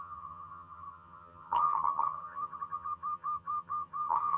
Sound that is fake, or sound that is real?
fake